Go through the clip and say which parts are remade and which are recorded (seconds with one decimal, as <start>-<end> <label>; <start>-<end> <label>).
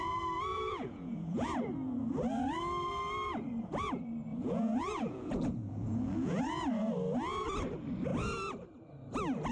0.0-0.5 recorded; 0.5-1.5 remade; 1.5-4.3 recorded; 4.3-6.4 remade; 6.4-9.5 recorded